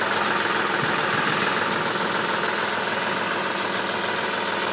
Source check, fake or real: real